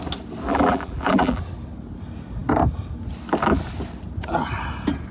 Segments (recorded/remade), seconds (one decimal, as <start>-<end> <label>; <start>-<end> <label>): 0.0-0.5 recorded; 0.5-1.4 remade; 1.4-5.1 recorded